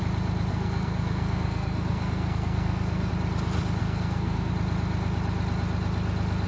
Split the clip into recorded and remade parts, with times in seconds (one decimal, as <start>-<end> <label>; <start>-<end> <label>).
0.0-0.5 recorded; 0.5-3.1 remade; 3.1-3.8 recorded; 3.8-4.5 remade; 4.5-6.5 recorded